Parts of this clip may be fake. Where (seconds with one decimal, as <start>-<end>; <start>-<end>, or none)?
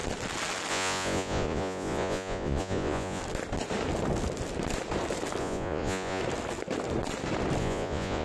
0.7-3.2; 5.4-6.2; 7.6-8.2